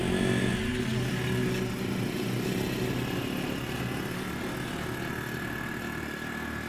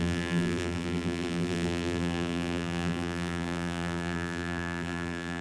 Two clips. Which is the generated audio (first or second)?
second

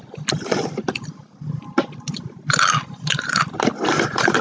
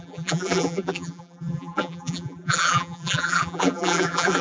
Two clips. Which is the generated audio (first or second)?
second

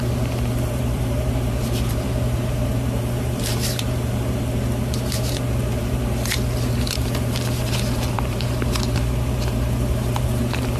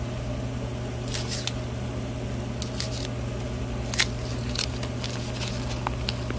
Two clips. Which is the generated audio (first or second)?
first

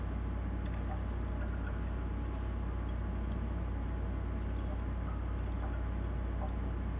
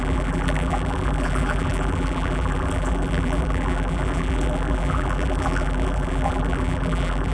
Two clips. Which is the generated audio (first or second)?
second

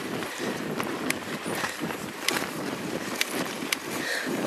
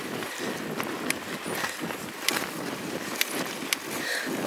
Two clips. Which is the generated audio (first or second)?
first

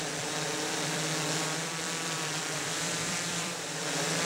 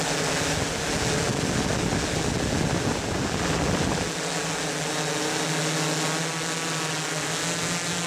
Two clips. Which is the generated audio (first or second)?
first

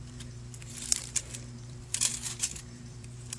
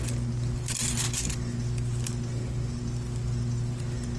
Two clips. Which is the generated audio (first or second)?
first